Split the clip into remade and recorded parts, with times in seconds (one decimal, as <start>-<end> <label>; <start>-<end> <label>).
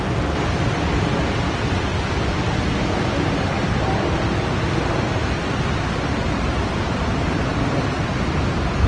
0.0-8.9 recorded